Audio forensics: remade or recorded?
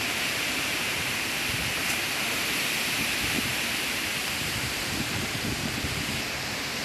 remade